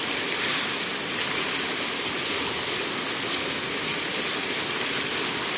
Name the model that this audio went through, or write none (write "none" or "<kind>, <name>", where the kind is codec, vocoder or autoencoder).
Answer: none